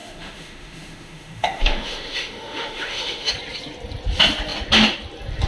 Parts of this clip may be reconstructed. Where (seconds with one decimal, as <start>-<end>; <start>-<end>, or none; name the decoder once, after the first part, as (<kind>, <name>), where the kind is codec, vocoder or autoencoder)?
0.0-3.3 (autoencoder, DAC-VAE)